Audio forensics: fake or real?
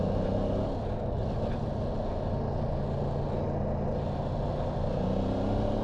real